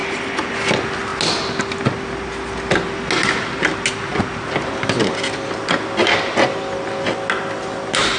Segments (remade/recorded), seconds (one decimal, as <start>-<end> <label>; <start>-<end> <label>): 0.0-8.2 recorded